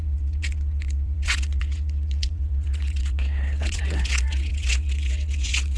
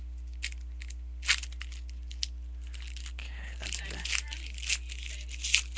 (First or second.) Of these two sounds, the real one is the second